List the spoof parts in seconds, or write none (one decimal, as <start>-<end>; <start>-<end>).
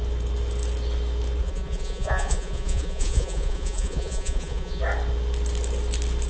1.4-4.8